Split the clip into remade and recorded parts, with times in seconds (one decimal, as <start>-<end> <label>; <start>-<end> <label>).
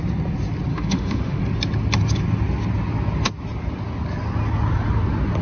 0.0-0.7 recorded; 0.7-1.4 remade; 1.4-5.4 recorded